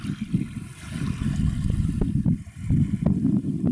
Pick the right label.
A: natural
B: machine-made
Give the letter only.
A